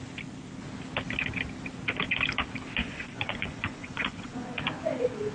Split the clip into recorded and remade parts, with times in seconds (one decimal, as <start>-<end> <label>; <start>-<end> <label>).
0.0-2.8 recorded; 2.8-4.6 remade; 4.6-5.3 recorded